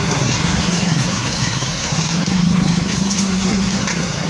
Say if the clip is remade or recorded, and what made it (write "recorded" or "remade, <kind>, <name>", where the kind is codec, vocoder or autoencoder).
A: remade, codec, SNAC